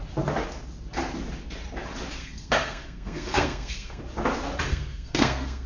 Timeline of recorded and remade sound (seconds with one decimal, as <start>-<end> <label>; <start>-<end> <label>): 0.0-2.2 recorded; 2.2-4.0 remade; 4.0-4.7 recorded; 4.7-5.7 remade